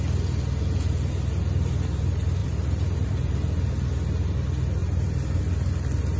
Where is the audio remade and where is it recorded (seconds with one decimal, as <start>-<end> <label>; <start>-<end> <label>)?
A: 0.0-2.4 recorded; 2.4-3.7 remade; 3.7-4.8 recorded; 4.8-5.4 remade; 5.4-6.2 recorded